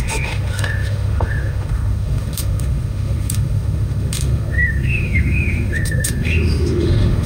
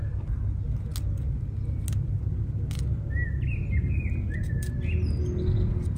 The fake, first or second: first